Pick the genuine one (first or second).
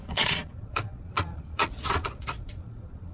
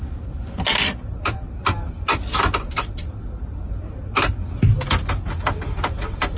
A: second